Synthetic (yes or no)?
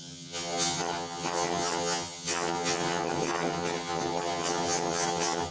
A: yes